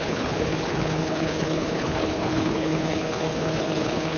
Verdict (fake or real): fake